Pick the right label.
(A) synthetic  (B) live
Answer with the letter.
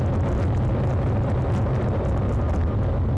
B